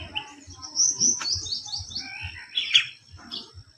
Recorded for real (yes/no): yes